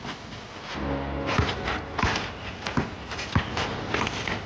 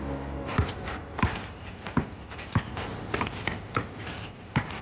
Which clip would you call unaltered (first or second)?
first